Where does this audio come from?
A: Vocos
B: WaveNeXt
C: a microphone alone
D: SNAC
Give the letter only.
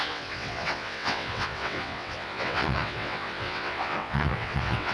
B